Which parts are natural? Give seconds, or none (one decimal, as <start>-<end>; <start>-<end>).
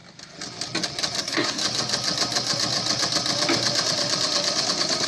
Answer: 0.0-1.2; 1.6-5.1